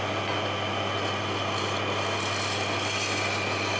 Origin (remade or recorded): recorded